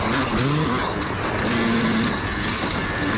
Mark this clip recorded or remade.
recorded